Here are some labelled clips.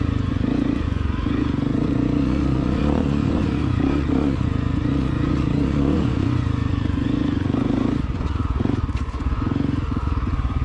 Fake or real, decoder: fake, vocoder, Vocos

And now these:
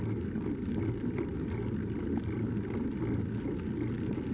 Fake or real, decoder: real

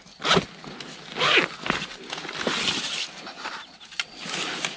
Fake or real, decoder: real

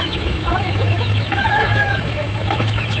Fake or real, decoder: fake, autoencoder, DAC-VAE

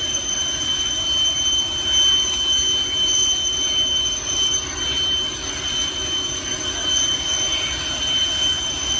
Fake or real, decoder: real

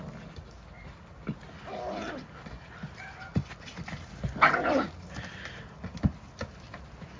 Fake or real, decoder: real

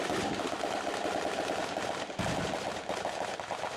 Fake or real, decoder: real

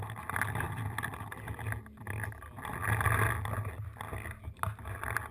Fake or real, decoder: real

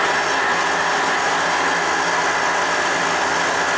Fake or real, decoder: real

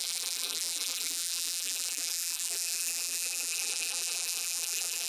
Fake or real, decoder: fake, vocoder, BigVGAN v2